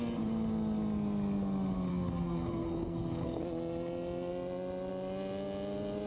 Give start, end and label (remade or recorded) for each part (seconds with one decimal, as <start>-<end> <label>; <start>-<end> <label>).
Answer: 0.0-1.9 recorded; 1.9-3.4 remade; 3.4-6.1 recorded